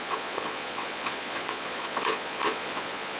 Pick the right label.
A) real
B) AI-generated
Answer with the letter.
B